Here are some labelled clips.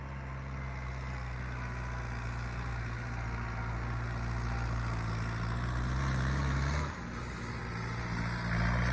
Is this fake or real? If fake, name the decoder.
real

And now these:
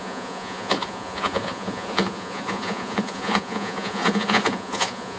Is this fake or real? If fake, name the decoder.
fake, vocoder, Vocos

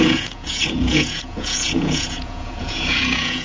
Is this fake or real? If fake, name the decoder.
fake, vocoder, Vocos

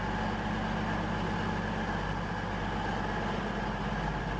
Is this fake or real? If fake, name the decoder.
real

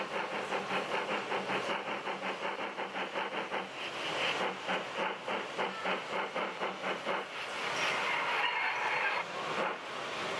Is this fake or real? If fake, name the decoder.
real